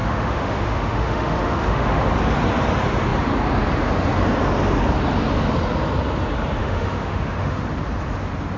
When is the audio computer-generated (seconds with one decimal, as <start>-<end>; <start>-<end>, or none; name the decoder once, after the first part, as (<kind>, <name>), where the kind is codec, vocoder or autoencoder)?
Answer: 0.0-2.0 (autoencoder, DAC-VAE); 6.6-7.6